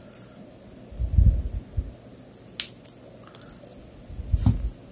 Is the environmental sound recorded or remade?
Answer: recorded